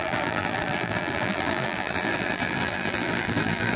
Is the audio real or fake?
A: fake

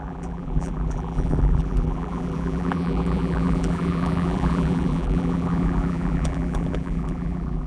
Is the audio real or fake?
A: fake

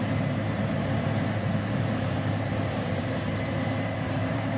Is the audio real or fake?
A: fake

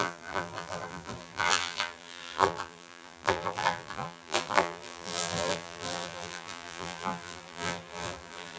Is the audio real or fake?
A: fake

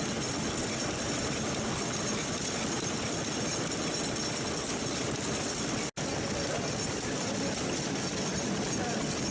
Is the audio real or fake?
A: real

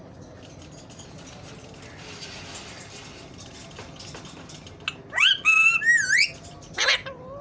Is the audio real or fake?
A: real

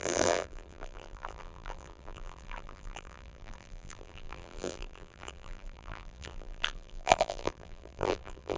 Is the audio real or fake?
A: fake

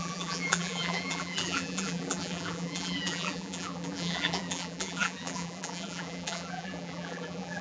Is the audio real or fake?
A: fake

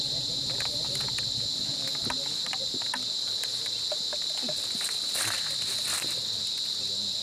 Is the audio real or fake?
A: real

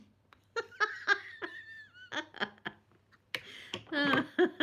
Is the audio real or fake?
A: real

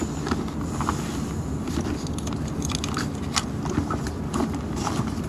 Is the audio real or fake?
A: real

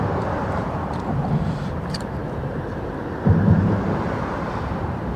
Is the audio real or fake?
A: fake